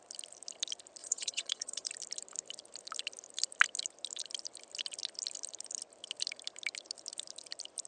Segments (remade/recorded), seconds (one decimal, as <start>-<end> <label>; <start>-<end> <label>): 0.0-1.0 recorded; 1.0-1.9 remade; 1.9-7.9 recorded